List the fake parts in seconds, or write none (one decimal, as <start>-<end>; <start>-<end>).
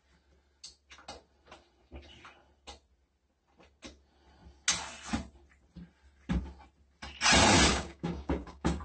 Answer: 7.7-8.8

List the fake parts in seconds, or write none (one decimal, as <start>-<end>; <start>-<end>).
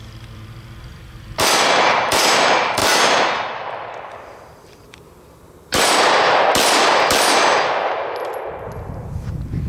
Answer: 0.0-6.5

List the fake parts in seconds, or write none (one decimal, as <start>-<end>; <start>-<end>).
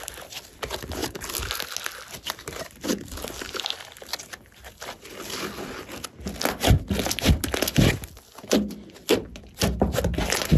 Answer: none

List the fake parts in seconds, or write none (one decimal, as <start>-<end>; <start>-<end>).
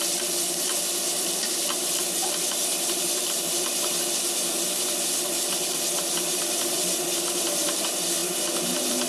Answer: 0.0-9.1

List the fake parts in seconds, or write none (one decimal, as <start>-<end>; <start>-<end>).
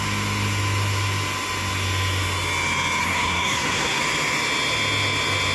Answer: 3.0-4.0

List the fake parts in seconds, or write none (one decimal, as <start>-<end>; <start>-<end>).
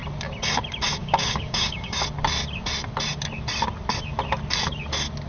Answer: 1.0-2.0